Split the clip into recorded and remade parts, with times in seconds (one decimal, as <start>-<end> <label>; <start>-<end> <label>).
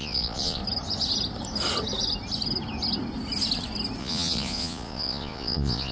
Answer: 0.0-0.6 remade; 0.6-4.0 recorded; 4.0-5.9 remade